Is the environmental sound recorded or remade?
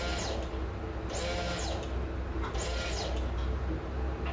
recorded